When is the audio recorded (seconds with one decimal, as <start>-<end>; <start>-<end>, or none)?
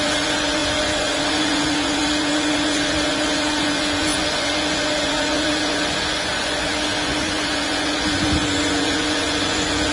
none